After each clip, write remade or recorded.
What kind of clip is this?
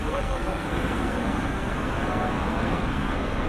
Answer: remade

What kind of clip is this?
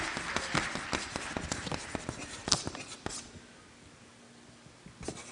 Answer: recorded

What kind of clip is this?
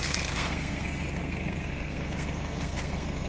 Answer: remade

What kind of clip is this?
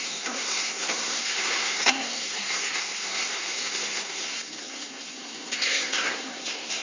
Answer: remade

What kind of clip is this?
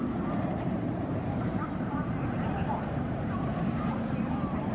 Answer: remade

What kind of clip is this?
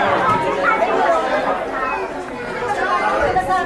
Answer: recorded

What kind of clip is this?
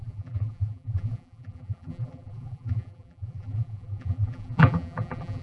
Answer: remade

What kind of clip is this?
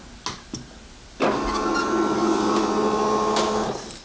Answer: recorded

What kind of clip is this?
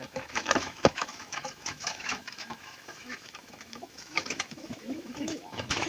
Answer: remade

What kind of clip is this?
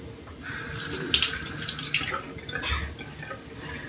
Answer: recorded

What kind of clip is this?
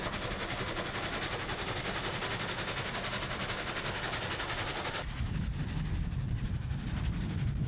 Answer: recorded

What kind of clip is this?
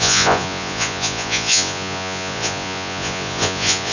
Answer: remade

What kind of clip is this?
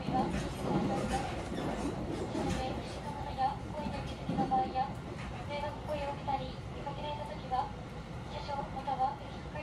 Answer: recorded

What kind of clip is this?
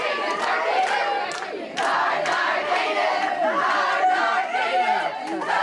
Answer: recorded